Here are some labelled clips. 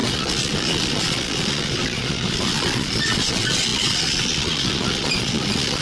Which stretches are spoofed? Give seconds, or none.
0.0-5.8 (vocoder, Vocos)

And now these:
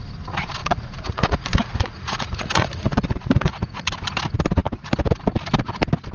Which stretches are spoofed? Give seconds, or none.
0.6-3.9 (vocoder, Vocos)